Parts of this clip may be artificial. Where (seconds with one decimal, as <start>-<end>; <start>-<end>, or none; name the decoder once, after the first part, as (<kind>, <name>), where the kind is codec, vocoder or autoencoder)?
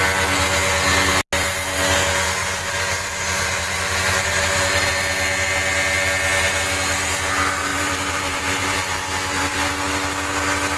2.4-4.9 (vocoder, BigVGAN v2); 7.7-9.7